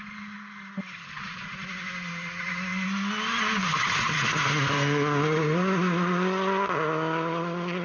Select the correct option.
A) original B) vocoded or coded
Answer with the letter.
A